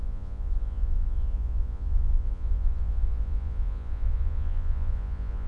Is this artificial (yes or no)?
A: yes